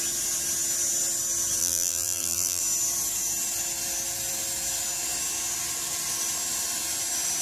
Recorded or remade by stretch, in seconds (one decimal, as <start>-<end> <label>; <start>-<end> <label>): 0.0-1.6 recorded; 1.6-2.6 remade; 2.6-7.4 recorded